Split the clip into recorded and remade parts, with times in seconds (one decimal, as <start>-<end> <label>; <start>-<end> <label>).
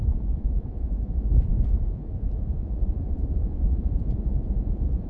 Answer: 0.0-5.1 remade